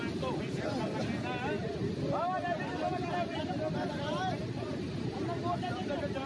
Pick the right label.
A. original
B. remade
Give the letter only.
A